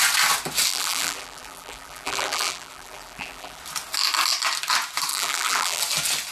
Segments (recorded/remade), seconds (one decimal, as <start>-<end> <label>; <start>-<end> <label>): 0.0-0.7 recorded; 0.7-3.6 remade; 3.6-5.1 recorded; 5.1-5.8 remade; 5.8-6.3 recorded